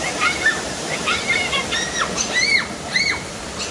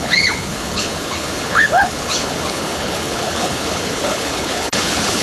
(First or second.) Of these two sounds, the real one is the first